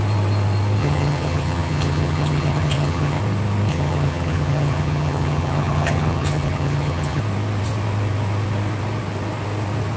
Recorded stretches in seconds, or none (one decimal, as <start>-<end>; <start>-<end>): 0.0-0.8; 3.2-3.7; 7.2-10.0